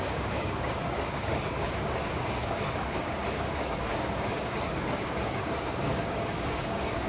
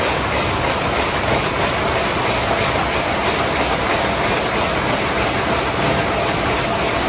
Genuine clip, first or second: second